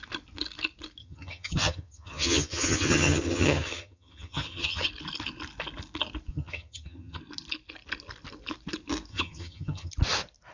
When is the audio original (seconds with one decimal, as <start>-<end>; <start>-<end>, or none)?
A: 0.0-1.0; 4.9-6.3; 7.2-9.1; 9.9-10.5